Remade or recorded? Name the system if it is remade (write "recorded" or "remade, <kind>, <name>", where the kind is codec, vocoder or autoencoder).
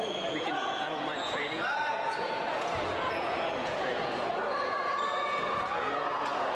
remade, vocoder, Vocos